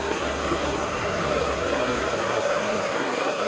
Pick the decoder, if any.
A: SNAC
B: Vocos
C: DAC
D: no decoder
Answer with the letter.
A